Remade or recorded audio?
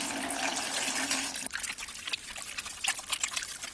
recorded